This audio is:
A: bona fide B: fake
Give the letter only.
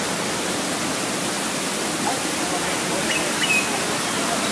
A